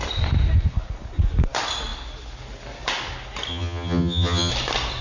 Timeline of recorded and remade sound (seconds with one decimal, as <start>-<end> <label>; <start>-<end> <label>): 0.0-3.5 recorded; 3.5-4.5 remade; 4.5-5.0 recorded